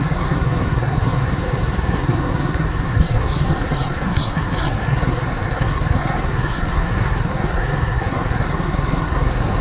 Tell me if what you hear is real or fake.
fake